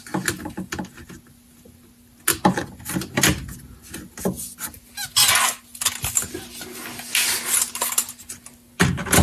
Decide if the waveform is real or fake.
real